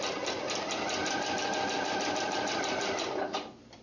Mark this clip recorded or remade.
recorded